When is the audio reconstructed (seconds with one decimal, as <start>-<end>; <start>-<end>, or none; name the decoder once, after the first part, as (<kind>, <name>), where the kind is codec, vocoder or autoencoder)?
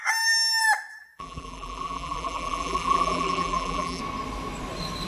0.9-4.0 (vocoder, BigVGAN v2)